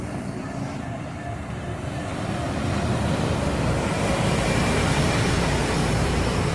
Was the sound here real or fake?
fake